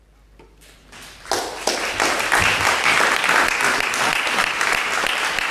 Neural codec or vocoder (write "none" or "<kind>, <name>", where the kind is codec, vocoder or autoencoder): none